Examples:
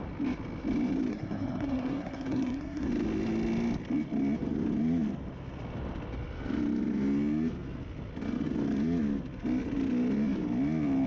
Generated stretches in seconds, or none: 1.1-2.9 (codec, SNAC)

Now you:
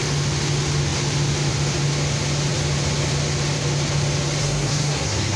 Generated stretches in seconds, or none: 4.4-5.4 (codec, SNAC)

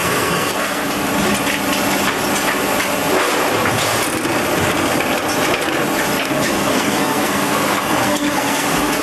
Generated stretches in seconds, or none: 0.0-0.8 (codec, SNAC); 6.2-9.0

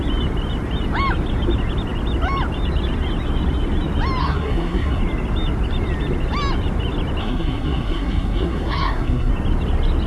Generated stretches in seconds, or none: 4.2-5.0 (codec, SNAC); 7.2-9.3

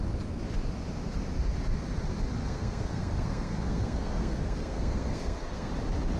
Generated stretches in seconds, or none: 2.4-5.7 (codec, SNAC)

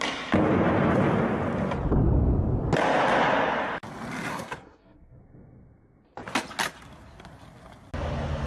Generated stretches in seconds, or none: 4.3-5.2 (codec, SNAC)